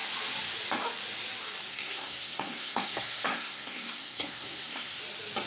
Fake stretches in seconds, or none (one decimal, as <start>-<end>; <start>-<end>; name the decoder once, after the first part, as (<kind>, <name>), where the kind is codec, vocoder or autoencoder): 1.7-5.0 (codec, SNAC)